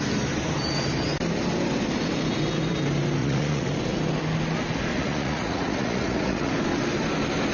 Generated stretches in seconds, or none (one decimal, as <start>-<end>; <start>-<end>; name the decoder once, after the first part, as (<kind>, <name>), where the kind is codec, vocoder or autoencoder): 3.2-3.7 (vocoder, Vocos); 4.9-6.5